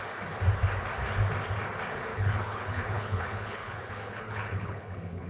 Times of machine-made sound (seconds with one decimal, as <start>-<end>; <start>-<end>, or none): 2.1-5.3